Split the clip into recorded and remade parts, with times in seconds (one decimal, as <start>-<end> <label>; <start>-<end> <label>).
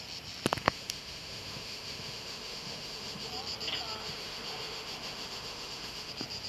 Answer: 0.0-0.6 recorded; 0.6-3.3 remade; 3.3-4.0 recorded; 4.0-6.1 remade; 6.1-6.5 recorded